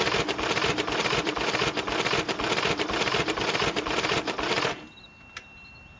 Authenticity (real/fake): real